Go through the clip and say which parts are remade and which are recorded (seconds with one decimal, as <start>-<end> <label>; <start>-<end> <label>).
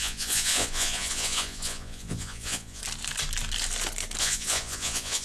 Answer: 0.0-2.8 remade; 2.8-4.2 recorded; 4.2-5.2 remade